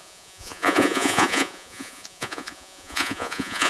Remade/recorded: remade